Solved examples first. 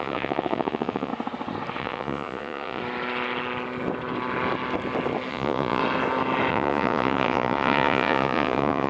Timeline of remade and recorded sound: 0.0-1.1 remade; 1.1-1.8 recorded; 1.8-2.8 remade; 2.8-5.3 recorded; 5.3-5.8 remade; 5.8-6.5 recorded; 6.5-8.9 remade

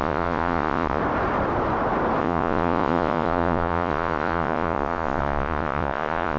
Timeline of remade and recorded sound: 0.0-1.0 remade; 1.0-2.2 recorded; 2.2-6.4 remade

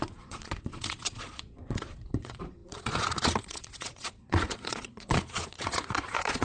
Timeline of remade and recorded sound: 0.0-6.4 remade

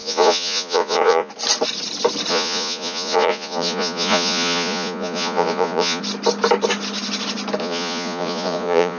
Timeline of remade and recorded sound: 0.0-1.3 remade; 1.3-2.3 recorded; 2.3-6.0 remade; 6.0-7.6 recorded; 7.6-9.0 remade

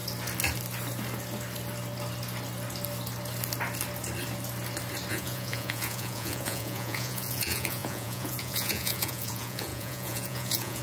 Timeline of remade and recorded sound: 0.0-5.1 recorded; 5.1-10.8 remade

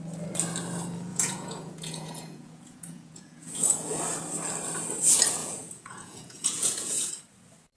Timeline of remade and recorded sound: 0.0-1.1 recorded; 1.1-4.0 remade; 4.0-5.4 recorded; 5.4-7.1 remade; 7.1-7.8 recorded

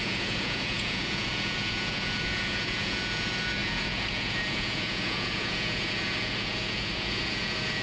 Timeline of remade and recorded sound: 0.0-7.8 remade